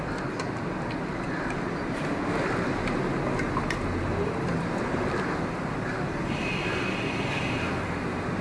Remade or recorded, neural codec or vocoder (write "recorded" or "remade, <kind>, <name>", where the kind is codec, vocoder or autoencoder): recorded